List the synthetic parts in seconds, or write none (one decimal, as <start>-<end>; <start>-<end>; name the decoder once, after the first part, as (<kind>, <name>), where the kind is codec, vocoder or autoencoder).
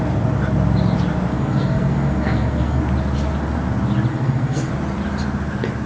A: 1.3-2.8 (codec, SNAC); 4.1-4.7